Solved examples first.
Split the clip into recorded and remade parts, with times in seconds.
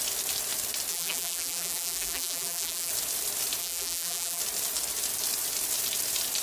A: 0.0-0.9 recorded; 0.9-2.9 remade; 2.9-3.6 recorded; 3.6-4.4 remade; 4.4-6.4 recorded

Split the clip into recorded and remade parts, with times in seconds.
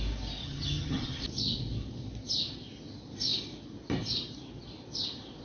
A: 0.0-0.4 recorded; 0.4-1.2 remade; 1.2-5.4 recorded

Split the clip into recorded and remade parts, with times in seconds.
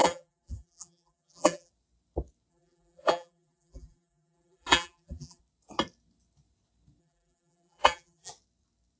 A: 0.0-1.7 remade; 1.7-2.5 recorded; 2.5-5.4 remade; 5.4-7.0 recorded; 7.0-8.3 remade; 8.3-9.0 recorded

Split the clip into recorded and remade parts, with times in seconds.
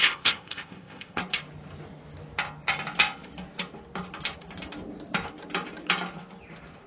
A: 0.0-1.2 remade; 1.2-6.9 recorded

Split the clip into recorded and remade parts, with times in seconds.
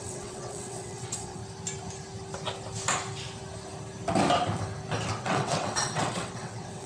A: 0.0-1.4 remade; 1.4-5.2 recorded; 5.2-6.9 remade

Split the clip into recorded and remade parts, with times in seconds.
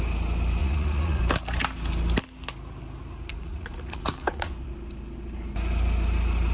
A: 0.0-0.6 recorded; 0.6-1.2 remade; 1.2-3.3 recorded; 3.3-4.5 remade; 4.5-6.5 recorded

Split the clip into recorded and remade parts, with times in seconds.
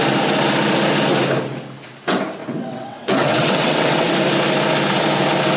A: 0.0-2.4 recorded; 2.4-4.1 remade; 4.1-5.6 recorded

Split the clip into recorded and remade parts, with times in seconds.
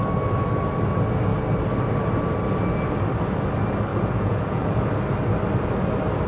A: 0.0-3.9 recorded; 3.9-4.9 remade; 4.9-6.3 recorded